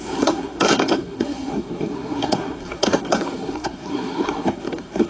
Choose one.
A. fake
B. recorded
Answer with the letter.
A